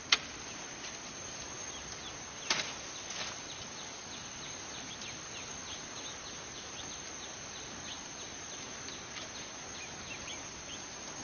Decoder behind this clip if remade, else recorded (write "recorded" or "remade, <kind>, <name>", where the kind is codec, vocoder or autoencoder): recorded